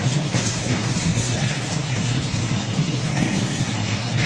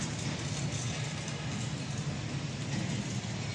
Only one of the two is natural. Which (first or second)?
second